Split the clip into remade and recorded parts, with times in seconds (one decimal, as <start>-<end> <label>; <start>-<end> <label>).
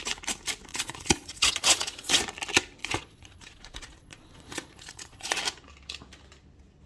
0.0-0.7 recorded; 0.7-2.2 remade; 2.2-2.8 recorded; 2.8-5.4 remade; 5.4-6.9 recorded